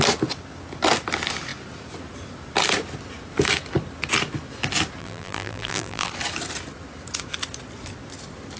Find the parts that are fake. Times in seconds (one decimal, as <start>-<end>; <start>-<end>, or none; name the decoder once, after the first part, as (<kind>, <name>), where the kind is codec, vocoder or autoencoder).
5.0-6.1 (vocoder, BigVGAN v2)